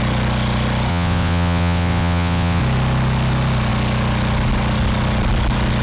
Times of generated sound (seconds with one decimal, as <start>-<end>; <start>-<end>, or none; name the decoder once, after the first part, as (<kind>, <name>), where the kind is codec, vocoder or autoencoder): 0.9-2.6 (vocoder, WaveNeXt)